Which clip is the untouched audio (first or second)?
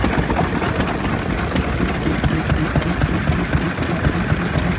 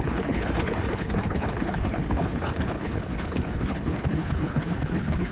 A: first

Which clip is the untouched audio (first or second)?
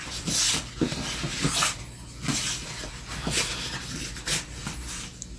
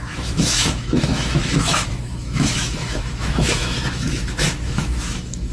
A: first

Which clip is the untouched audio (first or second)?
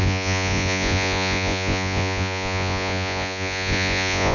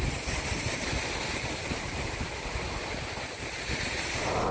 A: second